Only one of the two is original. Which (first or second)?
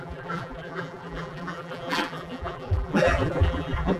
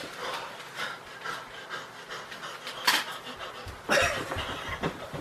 second